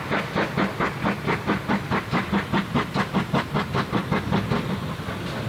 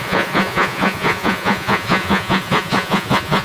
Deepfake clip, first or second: second